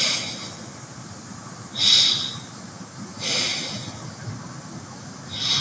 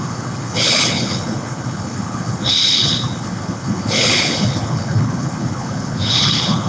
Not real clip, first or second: second